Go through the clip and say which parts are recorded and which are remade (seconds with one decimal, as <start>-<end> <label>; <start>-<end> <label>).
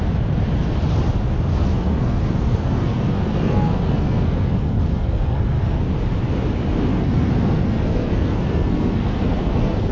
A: 0.0-1.5 recorded; 1.5-5.8 remade; 5.8-6.9 recorded; 6.9-9.9 remade